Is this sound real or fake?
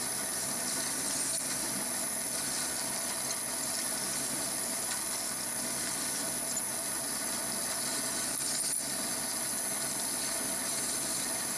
real